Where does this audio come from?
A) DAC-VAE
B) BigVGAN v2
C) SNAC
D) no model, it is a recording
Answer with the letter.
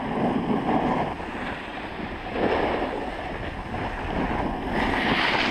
D